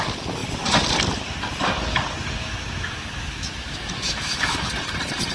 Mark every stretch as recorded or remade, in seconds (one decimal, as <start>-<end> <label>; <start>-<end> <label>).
0.0-2.4 recorded; 2.4-4.7 remade; 4.7-5.3 recorded